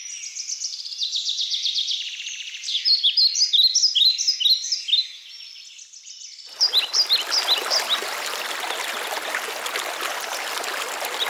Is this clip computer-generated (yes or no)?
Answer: no